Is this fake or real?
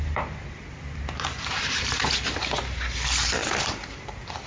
fake